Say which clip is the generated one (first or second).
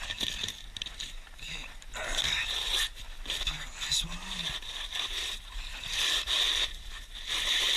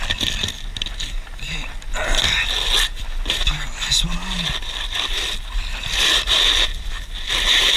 first